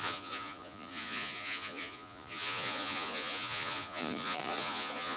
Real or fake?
fake